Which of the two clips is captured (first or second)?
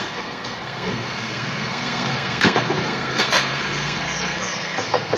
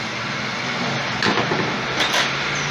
second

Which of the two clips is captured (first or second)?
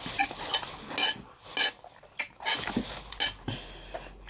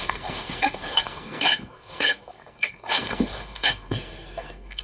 first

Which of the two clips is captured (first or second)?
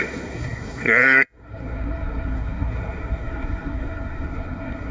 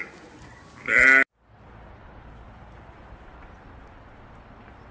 second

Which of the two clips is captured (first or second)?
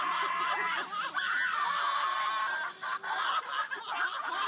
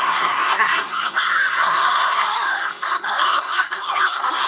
first